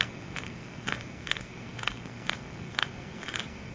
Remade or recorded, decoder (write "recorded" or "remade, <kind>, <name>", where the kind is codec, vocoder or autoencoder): remade, codec, SNAC